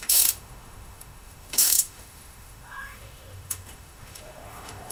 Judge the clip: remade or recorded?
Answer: remade